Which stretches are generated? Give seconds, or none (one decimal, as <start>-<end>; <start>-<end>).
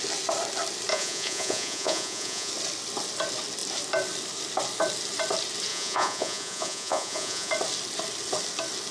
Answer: 0.9-2.5; 5.7-7.5